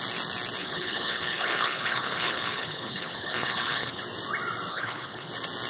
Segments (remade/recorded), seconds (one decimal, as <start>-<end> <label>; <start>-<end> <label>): 0.0-0.6 recorded; 0.6-4.0 remade; 4.0-4.7 recorded; 4.7-5.3 remade; 5.3-5.7 recorded